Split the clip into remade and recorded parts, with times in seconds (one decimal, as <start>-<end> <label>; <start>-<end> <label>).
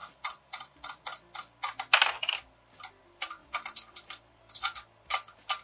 0.0-1.0 remade; 1.0-3.4 recorded; 3.4-4.4 remade; 4.4-5.6 recorded